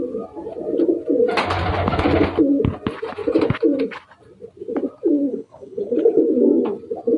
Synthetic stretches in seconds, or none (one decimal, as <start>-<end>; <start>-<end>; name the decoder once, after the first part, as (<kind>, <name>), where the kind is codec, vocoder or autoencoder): 5.3-6.2 (codec, HILCodec)